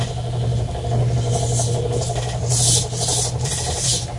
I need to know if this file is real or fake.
real